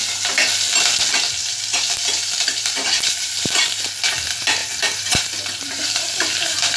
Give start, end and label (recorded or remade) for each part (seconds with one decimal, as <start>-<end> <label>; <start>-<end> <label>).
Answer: 0.0-1.7 recorded; 1.7-3.8 remade; 3.8-4.6 recorded; 4.6-6.8 remade